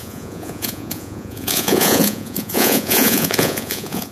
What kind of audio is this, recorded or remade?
remade